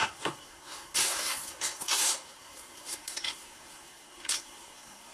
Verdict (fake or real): fake